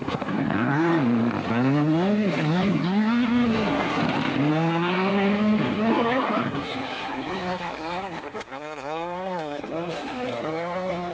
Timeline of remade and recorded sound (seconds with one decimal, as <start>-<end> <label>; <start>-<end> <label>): 0.0-0.9 remade; 0.9-1.5 recorded; 1.5-4.0 remade; 4.0-4.5 recorded; 4.5-11.1 remade